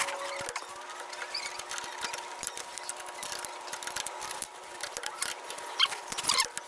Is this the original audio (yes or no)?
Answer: yes